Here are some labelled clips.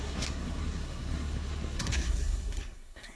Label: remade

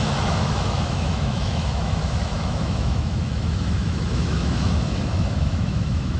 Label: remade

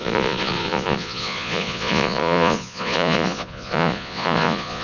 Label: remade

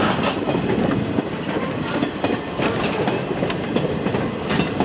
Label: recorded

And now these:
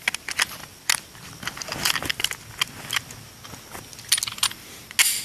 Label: recorded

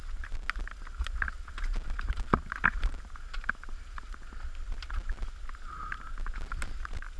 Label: recorded